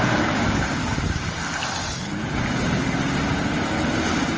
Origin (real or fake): real